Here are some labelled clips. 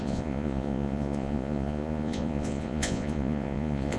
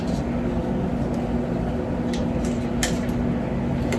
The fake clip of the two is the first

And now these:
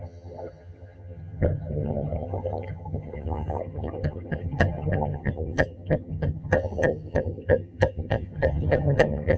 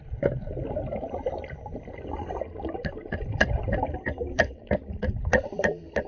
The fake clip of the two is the first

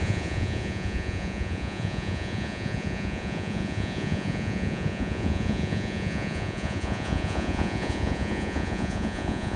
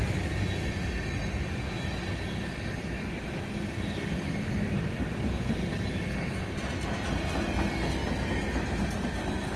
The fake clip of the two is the first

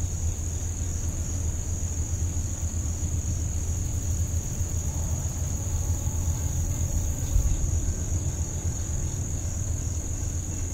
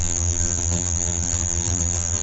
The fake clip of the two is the second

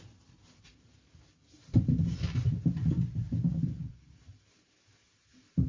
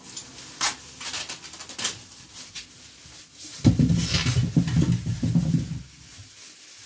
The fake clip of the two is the first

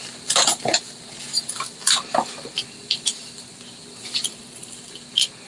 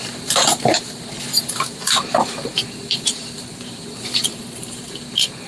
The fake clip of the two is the second